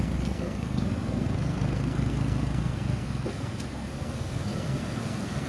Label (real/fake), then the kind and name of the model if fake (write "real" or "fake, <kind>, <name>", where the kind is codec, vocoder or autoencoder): fake, codec, SNAC